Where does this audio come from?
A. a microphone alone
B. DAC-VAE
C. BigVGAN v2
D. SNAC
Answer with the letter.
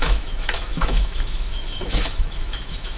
B